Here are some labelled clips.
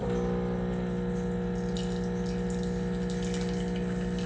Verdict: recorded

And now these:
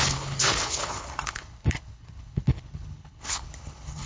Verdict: remade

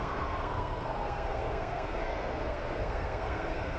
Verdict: remade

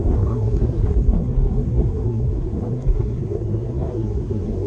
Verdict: remade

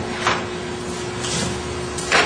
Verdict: recorded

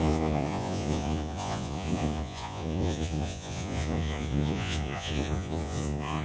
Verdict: remade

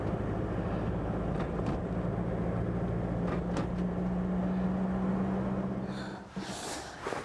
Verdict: recorded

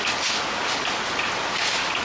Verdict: recorded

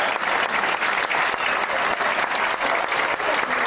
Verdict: recorded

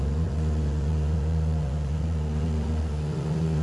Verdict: remade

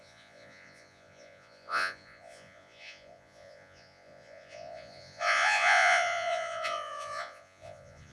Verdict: remade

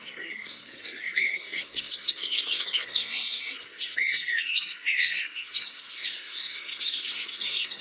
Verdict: remade